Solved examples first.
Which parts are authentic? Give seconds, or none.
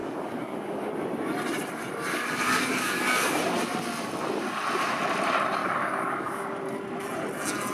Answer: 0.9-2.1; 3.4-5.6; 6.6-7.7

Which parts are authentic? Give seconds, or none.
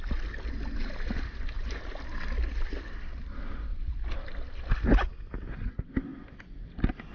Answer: 0.0-6.1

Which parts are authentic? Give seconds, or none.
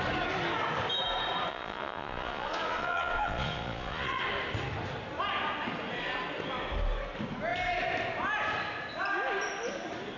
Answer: 0.0-1.5; 4.2-10.2